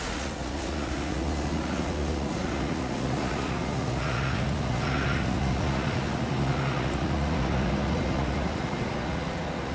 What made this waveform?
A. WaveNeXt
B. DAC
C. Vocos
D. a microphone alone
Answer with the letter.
C